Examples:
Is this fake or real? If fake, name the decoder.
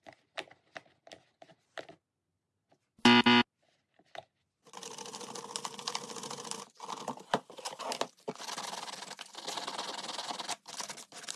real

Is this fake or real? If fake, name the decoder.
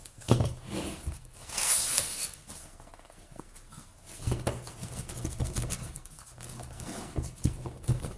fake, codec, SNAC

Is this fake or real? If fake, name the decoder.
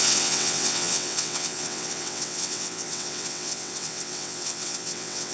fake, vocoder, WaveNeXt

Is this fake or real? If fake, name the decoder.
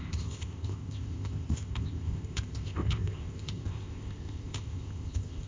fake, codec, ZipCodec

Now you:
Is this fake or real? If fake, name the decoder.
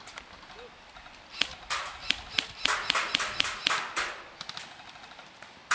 real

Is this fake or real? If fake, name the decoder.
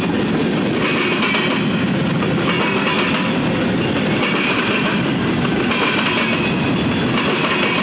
real